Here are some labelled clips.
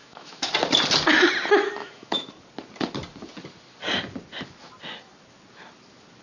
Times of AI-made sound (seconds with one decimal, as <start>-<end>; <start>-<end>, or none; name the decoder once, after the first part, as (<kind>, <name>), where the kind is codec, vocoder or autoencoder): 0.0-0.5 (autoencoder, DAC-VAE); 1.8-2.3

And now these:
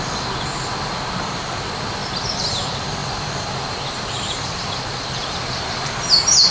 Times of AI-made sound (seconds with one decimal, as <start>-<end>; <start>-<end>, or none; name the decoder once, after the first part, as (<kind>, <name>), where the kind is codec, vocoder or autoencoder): 3.0-5.9 (vocoder, BigVGAN v2)

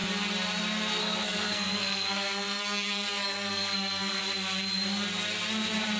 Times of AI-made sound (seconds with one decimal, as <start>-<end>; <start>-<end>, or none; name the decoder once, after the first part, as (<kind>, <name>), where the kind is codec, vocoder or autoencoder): 1.0-4.2 (codec, SNAC)

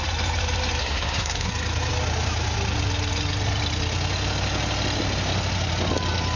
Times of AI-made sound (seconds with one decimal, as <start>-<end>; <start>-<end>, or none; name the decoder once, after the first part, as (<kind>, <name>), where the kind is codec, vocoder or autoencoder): 0.8-1.5 (codec, SNAC)

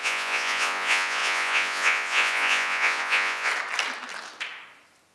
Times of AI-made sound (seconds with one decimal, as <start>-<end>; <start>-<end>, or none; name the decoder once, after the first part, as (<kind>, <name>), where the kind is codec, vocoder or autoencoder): 0.0-3.5 (vocoder, Vocos)